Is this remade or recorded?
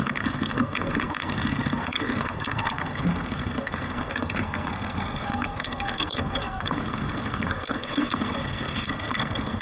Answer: remade